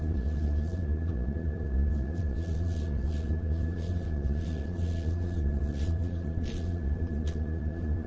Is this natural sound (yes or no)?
no